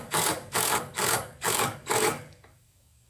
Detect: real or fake fake